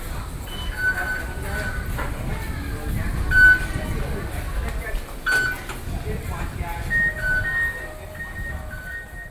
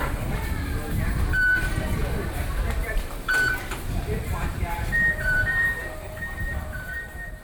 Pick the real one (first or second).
first